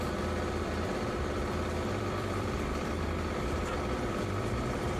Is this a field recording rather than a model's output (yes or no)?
no